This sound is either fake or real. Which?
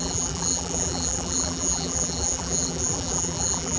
fake